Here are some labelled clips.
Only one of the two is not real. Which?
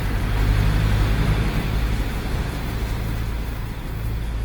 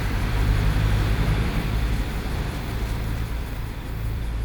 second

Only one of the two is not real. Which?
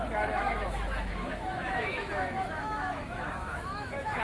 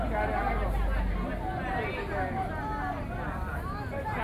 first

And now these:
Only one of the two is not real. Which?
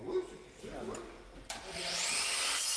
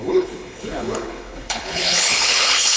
second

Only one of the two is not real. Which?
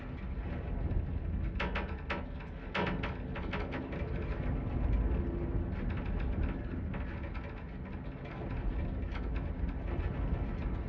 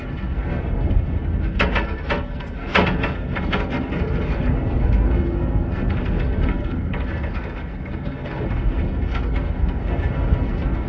second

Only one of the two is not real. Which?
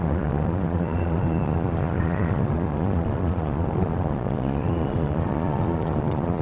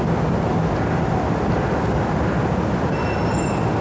first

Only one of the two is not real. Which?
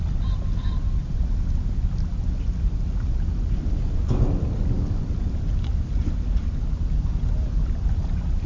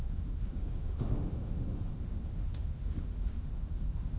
second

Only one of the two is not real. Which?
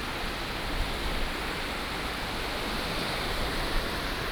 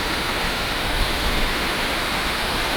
second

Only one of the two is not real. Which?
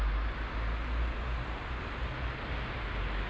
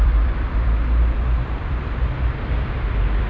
second